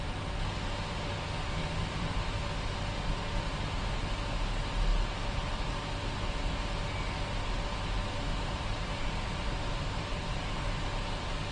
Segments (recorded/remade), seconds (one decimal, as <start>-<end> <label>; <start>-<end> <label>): 0.0-1.6 recorded; 1.6-2.4 remade; 2.4-8.3 recorded; 8.3-10.8 remade; 10.8-11.5 recorded

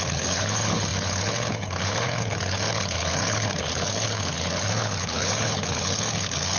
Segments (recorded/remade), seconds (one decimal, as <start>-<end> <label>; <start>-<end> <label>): 0.0-6.6 remade

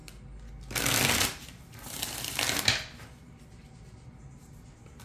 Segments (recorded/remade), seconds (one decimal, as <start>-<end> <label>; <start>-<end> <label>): 0.0-5.0 recorded

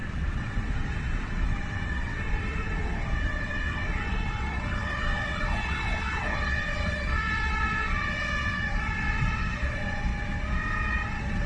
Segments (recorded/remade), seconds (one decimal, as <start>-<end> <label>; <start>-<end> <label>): 0.0-10.1 remade; 10.1-11.1 recorded; 11.1-11.5 remade

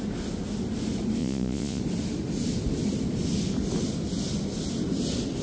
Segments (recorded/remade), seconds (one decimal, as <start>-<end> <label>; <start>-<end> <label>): 0.0-1.2 recorded; 1.2-1.8 remade; 1.8-5.4 recorded

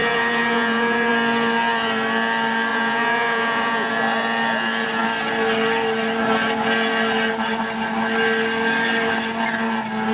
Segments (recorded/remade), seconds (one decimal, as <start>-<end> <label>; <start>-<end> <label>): 0.0-1.1 remade; 1.1-2.7 recorded; 2.7-3.9 remade; 3.9-10.1 recorded

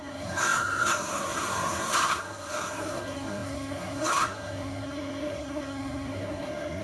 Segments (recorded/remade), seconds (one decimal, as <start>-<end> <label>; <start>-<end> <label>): 0.0-6.8 remade

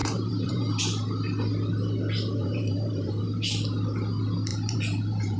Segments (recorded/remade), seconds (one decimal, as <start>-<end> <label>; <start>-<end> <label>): 0.0-0.8 remade; 0.8-2.4 recorded; 2.4-3.2 remade; 3.2-4.5 recorded; 4.5-5.4 remade